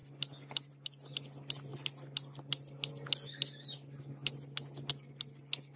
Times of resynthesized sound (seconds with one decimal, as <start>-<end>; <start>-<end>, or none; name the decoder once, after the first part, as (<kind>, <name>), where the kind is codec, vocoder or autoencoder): none